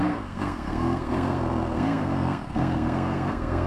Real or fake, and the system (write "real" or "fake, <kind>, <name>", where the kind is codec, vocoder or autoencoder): fake, codec, SNAC